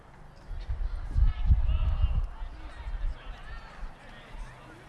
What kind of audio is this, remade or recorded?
recorded